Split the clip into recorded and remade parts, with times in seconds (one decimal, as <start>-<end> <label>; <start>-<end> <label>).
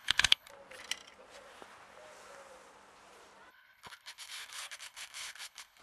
0.0-0.5 remade; 0.5-3.5 recorded; 3.5-5.8 remade